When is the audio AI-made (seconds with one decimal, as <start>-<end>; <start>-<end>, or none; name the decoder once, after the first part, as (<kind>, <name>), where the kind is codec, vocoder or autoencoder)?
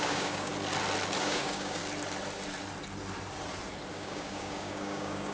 0.0-0.5 (codec, DAC); 1.2-1.8; 3.9-5.3